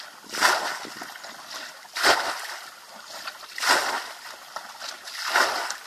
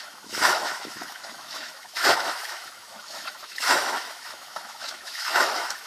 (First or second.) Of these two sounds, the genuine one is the first